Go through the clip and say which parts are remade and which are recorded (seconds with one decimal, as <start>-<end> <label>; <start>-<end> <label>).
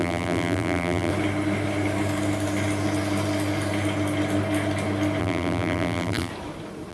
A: 0.0-1.1 remade; 1.1-5.2 recorded; 5.2-6.3 remade; 6.3-6.9 recorded